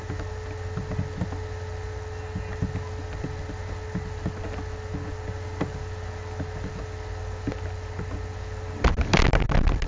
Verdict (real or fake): real